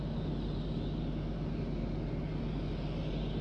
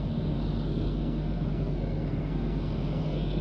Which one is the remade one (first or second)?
second